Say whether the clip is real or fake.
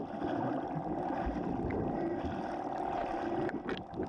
real